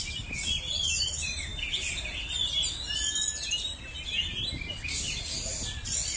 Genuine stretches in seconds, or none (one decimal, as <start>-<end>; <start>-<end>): 0.0-6.2